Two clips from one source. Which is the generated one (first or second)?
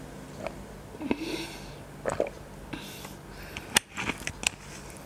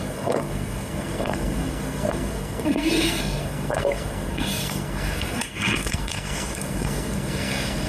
second